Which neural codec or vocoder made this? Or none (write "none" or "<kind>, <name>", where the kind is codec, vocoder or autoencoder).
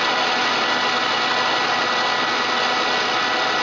none